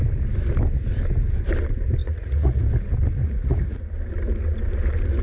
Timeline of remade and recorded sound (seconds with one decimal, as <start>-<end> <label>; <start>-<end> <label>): 0.0-2.0 recorded; 2.0-2.6 remade; 2.6-3.2 recorded; 3.2-3.8 remade; 3.8-5.2 recorded